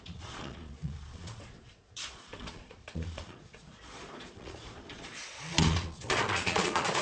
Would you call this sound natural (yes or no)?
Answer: no